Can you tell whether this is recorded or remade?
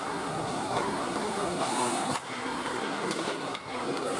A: remade